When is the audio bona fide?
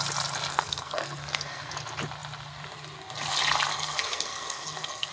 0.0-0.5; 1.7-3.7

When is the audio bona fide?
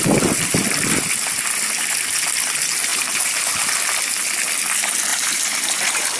0.0-2.9; 3.5-5.1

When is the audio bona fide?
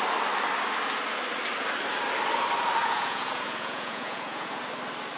0.0-2.8; 4.6-5.2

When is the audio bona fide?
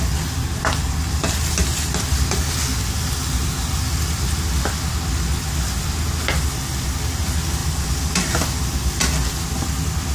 0.0-10.1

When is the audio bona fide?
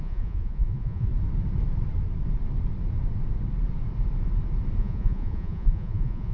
1.1-4.8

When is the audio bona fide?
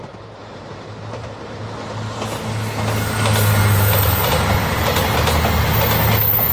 1.6-3.6; 4.3-6.5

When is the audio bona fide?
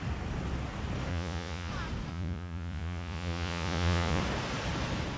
0.0-1.1; 1.7-2.1; 4.2-5.2